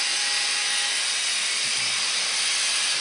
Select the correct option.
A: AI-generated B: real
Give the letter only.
B